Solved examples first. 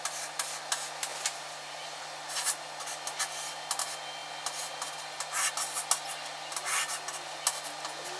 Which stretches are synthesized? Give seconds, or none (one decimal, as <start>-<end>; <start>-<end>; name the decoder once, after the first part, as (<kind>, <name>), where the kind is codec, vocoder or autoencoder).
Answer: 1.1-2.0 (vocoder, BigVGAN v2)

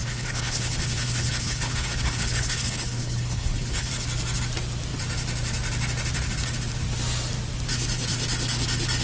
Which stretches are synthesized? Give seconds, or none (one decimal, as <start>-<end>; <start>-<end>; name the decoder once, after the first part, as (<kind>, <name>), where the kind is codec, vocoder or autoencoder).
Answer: 0.0-3.9 (codec, HILCodec)

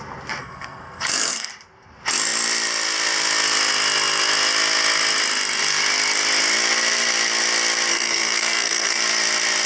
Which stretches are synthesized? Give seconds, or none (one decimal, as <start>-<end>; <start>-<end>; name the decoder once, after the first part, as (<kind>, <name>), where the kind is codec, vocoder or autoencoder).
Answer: 0.4-1.5 (codec, SNAC); 7.9-9.0